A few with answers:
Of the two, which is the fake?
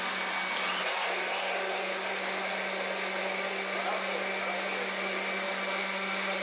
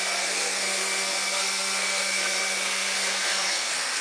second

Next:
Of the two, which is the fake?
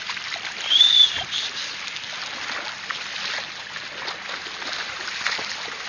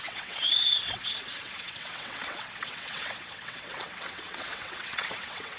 second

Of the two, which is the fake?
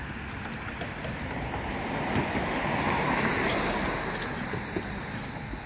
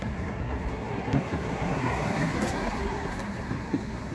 second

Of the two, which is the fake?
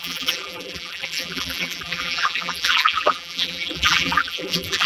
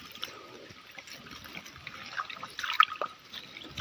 first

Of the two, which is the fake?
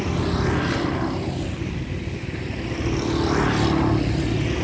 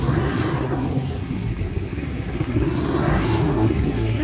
second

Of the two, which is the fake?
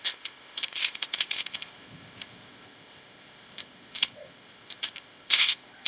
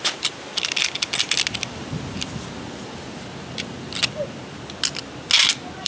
first